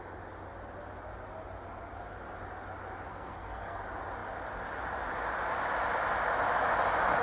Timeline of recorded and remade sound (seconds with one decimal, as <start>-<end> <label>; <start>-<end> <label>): 0.0-3.1 recorded; 3.1-3.8 remade; 3.8-7.2 recorded